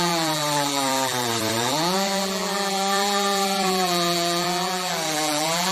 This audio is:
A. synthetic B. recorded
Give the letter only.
A